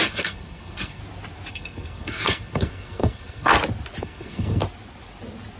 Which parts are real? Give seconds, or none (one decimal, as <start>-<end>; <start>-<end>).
1.0-1.5; 3.5-4.0; 4.6-5.6

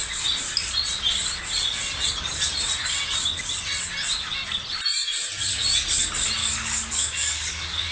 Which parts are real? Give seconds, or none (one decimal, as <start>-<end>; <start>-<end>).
0.0-6.4

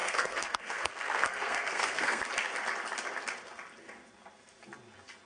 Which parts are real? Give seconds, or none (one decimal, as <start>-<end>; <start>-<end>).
2.2-5.3

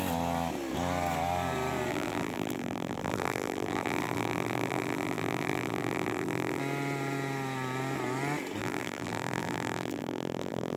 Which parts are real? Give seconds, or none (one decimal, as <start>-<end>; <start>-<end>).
0.0-1.9; 6.6-8.6

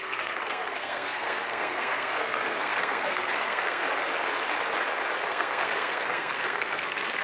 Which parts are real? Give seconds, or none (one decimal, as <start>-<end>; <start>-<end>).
3.8-5.3

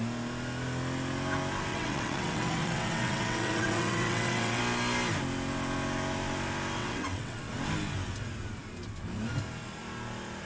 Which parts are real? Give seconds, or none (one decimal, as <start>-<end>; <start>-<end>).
0.0-1.7; 4.6-6.8; 7.4-10.5